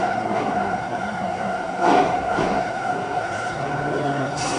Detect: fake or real fake